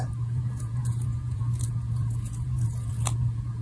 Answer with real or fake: fake